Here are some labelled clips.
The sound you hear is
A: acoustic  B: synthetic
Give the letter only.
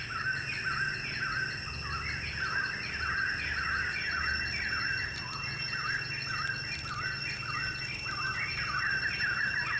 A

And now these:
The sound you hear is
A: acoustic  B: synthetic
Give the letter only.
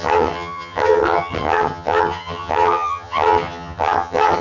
B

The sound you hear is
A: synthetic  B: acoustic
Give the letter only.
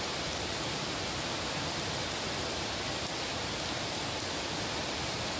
A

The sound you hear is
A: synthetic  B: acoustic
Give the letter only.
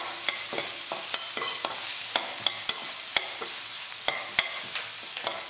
B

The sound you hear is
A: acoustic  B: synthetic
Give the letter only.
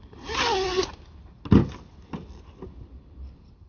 A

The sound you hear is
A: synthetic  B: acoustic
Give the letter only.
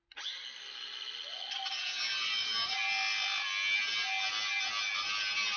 B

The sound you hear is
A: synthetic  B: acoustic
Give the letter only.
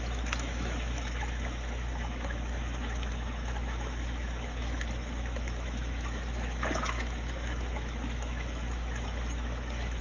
A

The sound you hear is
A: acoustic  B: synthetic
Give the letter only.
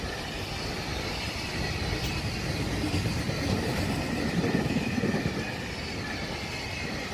A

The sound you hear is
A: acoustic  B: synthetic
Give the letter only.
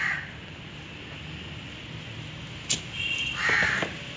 A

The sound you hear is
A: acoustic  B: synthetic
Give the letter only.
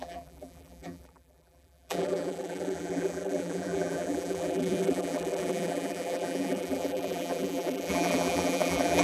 B